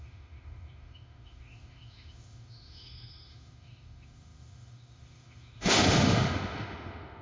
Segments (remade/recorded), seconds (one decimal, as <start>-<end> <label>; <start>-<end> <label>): 0.0-7.2 remade